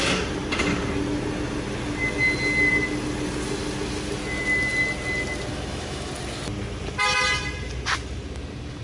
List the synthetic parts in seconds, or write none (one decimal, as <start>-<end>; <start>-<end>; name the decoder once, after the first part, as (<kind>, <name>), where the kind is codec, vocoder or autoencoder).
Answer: 5.5-6.1 (autoencoder, DAC-VAE)